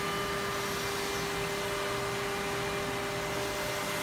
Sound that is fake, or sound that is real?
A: real